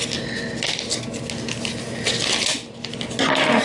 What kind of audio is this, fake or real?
real